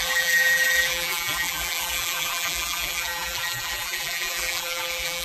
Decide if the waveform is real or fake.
fake